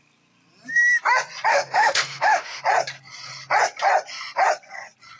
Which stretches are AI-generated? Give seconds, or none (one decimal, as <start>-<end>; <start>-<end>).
1.5-2.6